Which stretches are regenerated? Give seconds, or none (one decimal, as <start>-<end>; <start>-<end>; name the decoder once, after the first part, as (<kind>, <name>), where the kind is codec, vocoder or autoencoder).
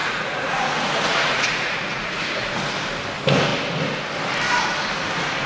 0.0-2.7 (vocoder, Vocos)